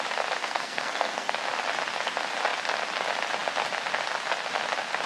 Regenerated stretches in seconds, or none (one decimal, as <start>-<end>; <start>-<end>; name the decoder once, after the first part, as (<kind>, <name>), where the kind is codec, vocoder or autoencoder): 0.4-1.3 (codec, SNAC)